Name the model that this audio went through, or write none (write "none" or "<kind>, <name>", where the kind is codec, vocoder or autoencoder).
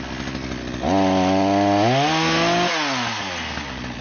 none